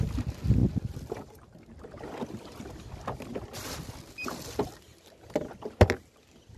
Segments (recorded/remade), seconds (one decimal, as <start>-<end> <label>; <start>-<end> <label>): 0.0-6.6 recorded